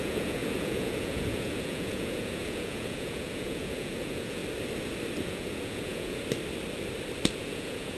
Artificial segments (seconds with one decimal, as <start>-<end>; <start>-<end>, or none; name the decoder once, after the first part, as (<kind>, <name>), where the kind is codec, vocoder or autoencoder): 0.0-4.4 (vocoder, Vocos); 5.2-6.2; 7.4-8.0